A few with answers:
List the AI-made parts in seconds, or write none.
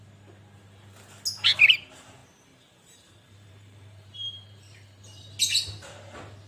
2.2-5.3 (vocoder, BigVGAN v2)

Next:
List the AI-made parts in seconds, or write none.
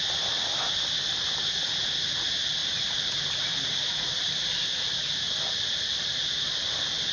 none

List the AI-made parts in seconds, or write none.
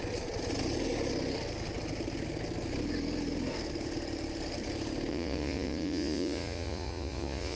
5.1-7.6 (vocoder, Vocos)